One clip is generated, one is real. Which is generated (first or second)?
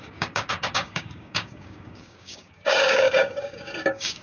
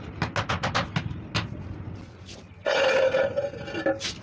first